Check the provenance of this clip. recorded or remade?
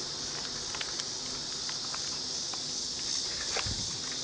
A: recorded